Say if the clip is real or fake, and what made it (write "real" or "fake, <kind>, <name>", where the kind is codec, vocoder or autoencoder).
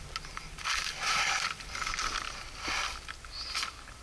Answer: real